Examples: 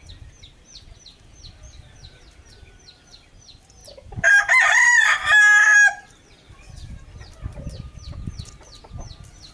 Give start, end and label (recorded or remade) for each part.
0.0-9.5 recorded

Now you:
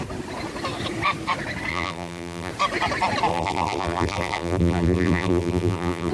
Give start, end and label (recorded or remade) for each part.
0.0-1.7 recorded; 1.7-2.5 remade; 2.5-3.3 recorded; 3.3-6.1 remade

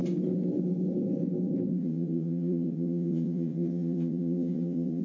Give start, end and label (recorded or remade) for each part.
0.0-1.8 recorded; 1.8-5.0 remade

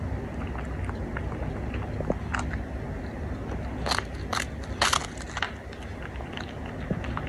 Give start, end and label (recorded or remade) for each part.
0.0-7.3 recorded

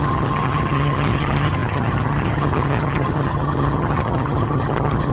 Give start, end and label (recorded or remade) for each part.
0.0-5.1 remade

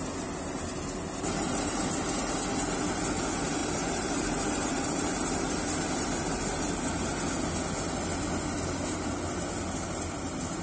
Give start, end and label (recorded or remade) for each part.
0.0-3.6 recorded; 3.6-5.5 remade; 5.5-10.6 recorded

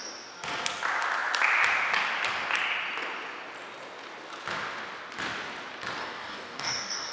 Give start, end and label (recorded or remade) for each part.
0.0-6.0 recorded; 6.0-7.1 remade